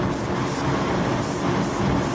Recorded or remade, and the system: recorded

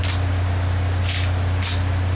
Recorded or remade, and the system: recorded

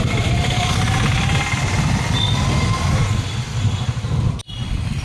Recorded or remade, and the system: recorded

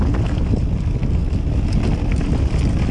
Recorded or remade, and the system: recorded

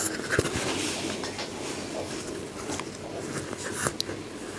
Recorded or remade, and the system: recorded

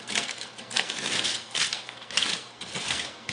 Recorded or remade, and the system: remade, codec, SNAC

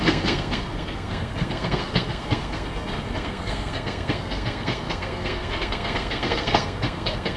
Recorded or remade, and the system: remade, codec, SNAC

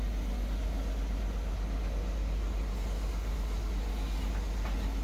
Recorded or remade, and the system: recorded